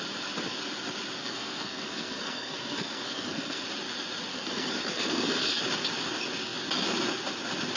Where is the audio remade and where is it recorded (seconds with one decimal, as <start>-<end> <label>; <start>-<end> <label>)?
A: 0.0-1.2 recorded; 1.2-3.6 remade; 3.6-4.3 recorded; 4.3-5.6 remade; 5.6-7.8 recorded